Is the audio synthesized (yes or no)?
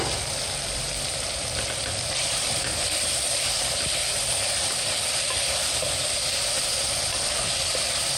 yes